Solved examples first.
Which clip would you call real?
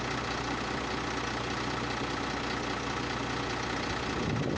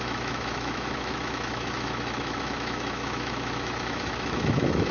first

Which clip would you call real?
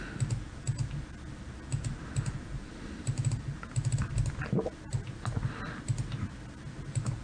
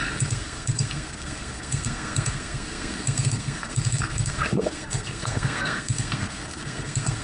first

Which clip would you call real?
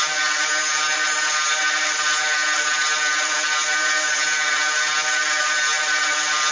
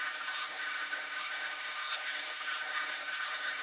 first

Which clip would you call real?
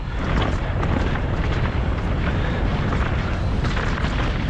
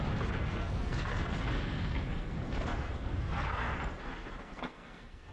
first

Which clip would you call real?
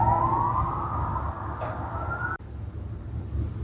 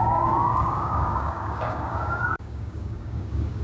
first